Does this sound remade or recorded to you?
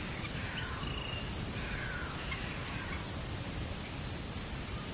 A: remade